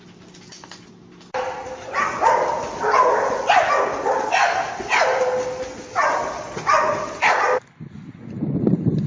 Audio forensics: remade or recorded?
recorded